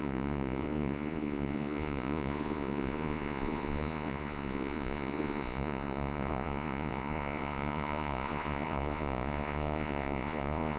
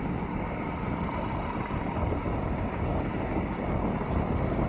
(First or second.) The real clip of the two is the second